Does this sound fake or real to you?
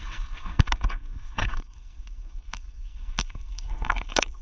fake